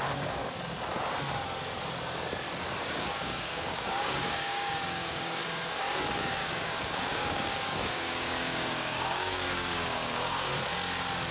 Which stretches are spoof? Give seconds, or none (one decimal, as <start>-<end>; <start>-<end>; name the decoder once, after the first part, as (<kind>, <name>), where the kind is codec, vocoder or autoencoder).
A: 0.0-0.4 (codec, DAC); 2.8-5.4; 6.2-10.5